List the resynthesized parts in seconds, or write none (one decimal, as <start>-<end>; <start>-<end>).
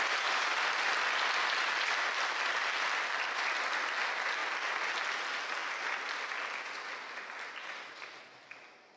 none